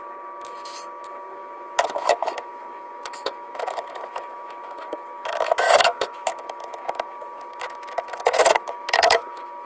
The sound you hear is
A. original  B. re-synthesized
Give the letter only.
B